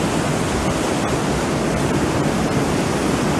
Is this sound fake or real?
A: real